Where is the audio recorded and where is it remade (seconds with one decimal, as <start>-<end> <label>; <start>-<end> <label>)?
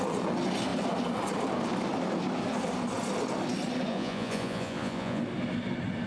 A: 0.0-3.9 recorded; 3.9-5.2 remade; 5.2-6.1 recorded